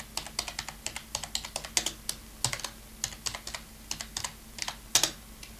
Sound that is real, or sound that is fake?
real